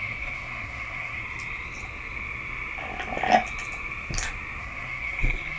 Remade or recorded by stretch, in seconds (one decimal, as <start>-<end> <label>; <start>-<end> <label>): 0.0-1.2 remade; 1.2-4.6 recorded; 4.6-5.6 remade